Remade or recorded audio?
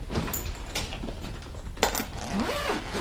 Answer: recorded